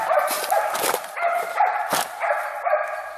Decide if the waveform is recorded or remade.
recorded